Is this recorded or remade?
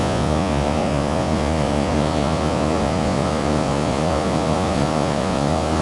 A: remade